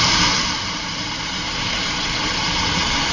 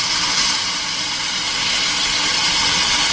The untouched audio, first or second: second